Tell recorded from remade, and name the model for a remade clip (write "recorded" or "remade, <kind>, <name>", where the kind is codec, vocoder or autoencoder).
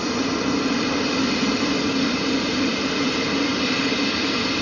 remade, vocoder, BigVGAN v2